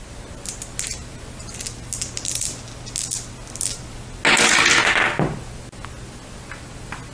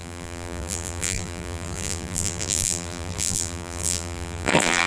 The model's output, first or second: second